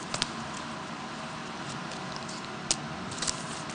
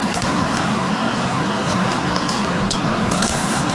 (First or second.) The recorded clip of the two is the first